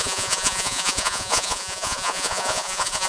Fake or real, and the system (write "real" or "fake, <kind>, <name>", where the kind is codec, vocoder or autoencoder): fake, vocoder, Vocos